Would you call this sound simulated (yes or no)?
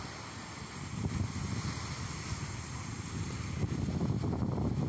no